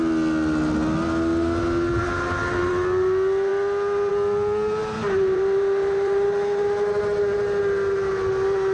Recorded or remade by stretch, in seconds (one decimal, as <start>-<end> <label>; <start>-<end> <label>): 0.0-2.0 recorded; 2.0-2.7 remade; 2.7-4.8 recorded; 4.8-6.6 remade; 6.6-8.7 recorded